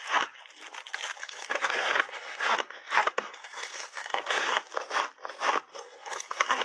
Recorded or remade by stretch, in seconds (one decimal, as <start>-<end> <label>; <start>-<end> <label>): 0.0-1.2 recorded; 1.2-4.6 remade; 4.6-5.7 recorded; 5.7-6.6 remade